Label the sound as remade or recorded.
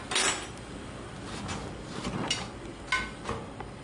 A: recorded